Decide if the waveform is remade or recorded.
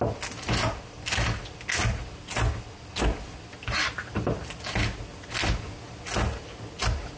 recorded